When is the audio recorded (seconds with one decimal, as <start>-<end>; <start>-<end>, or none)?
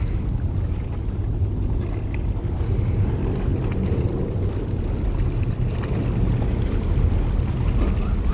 0.0-8.3